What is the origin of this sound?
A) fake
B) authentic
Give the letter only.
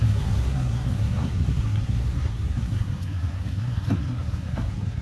A